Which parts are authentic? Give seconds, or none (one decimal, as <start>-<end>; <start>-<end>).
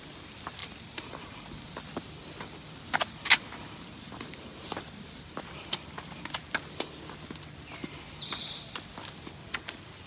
0.0-10.1